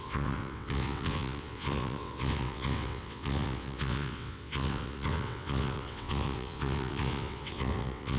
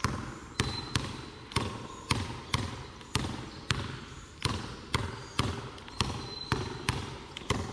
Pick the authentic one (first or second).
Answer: second